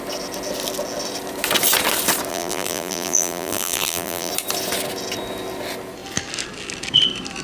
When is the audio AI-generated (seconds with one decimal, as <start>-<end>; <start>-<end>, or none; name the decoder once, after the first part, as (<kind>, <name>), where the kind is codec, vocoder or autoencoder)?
2.3-4.3 (vocoder, BigVGAN v2)